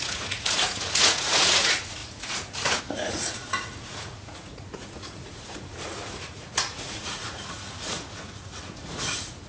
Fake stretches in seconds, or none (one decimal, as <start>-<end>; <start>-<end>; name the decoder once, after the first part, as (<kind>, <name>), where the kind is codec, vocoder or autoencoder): 0.0-9.5 (vocoder, Vocos)